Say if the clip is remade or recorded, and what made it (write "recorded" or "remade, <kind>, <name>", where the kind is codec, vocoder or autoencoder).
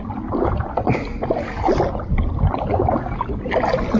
recorded